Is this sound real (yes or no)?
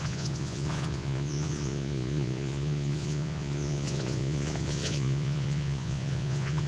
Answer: no